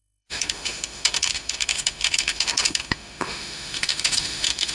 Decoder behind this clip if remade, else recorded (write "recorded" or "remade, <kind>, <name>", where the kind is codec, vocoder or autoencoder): remade, autoencoder, DAC-VAE